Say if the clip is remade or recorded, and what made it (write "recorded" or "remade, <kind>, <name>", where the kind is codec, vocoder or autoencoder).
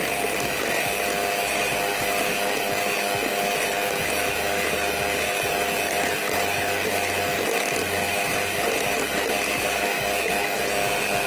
recorded